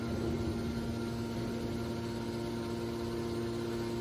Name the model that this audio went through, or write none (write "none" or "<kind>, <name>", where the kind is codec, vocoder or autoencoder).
none